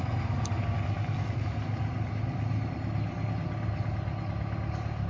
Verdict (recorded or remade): recorded